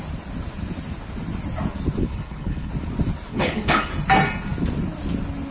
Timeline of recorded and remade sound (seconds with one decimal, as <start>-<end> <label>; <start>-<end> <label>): 0.0-2.0 recorded; 2.0-2.7 remade; 2.7-3.3 recorded; 3.3-3.9 remade; 3.9-5.5 recorded